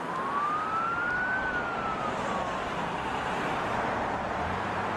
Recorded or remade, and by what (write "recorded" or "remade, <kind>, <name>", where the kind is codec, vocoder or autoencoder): recorded